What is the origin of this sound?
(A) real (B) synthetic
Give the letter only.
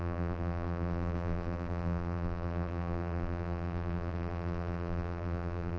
B